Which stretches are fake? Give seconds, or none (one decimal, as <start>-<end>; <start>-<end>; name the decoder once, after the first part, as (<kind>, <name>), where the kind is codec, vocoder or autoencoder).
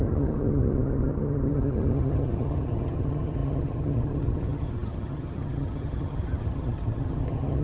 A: 0.0-7.6 (vocoder, HiFi-GAN)